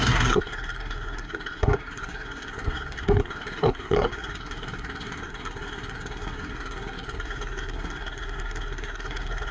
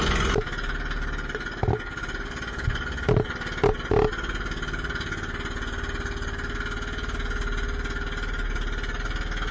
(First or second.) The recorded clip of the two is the second